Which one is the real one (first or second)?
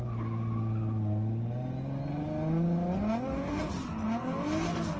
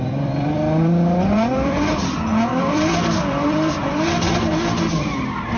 first